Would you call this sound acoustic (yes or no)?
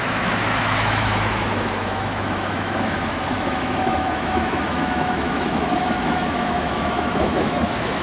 no